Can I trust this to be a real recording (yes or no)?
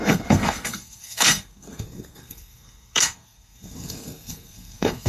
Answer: no